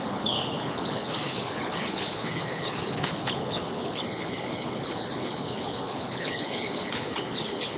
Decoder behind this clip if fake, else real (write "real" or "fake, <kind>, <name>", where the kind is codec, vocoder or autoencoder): fake, codec, HILCodec